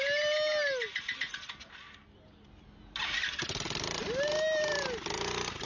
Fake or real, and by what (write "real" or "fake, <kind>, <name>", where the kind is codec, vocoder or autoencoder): real